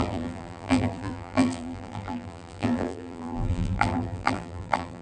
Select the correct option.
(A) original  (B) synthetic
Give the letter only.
B